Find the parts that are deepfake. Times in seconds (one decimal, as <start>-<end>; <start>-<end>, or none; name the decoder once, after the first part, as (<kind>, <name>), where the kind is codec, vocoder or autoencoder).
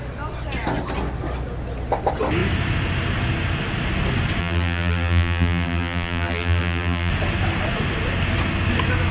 4.4-7.1 (vocoder, BigVGAN v2)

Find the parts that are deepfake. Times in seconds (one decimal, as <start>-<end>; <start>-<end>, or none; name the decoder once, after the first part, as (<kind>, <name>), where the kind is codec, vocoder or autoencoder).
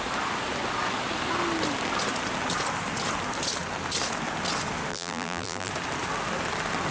4.9-5.7 (vocoder, BigVGAN v2)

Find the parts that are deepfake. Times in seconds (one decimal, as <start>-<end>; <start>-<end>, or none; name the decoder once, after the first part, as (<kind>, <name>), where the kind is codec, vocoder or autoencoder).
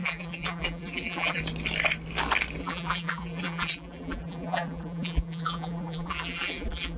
0.0-1.4 (vocoder, BigVGAN v2); 2.6-7.0